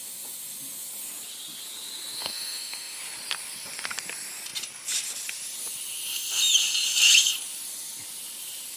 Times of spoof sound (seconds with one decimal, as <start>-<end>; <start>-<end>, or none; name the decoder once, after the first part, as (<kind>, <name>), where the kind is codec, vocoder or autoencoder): 2.2-3.0 (autoencoder, DAC-VAE)